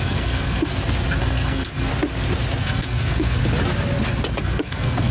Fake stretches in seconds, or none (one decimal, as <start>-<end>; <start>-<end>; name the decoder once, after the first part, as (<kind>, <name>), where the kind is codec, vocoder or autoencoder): 0.0-0.7 (codec, SNAC); 1.2-1.9; 2.6-3.4; 4.4-5.1